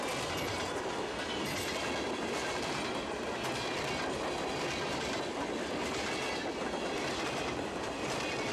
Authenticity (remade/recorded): recorded